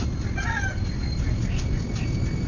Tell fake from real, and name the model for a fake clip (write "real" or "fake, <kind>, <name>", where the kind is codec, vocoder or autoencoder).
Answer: real